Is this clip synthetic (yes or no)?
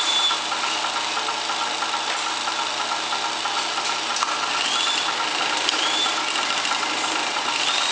no